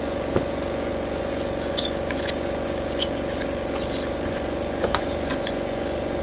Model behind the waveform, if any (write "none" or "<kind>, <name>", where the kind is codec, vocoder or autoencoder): vocoder, Vocos